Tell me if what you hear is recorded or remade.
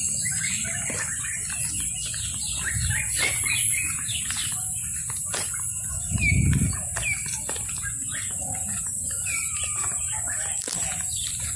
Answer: recorded